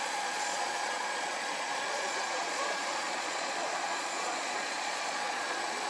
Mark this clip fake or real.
fake